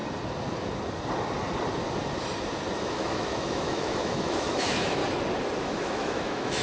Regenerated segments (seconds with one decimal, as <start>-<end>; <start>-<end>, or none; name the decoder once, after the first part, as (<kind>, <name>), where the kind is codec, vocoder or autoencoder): 2.8-5.0 (autoencoder, DAC-VAE); 5.6-6.6